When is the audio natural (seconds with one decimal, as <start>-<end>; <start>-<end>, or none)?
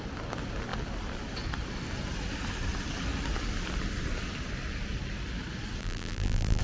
0.0-5.8